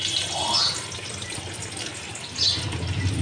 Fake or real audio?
real